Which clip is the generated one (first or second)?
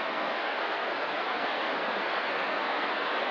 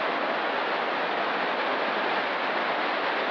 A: first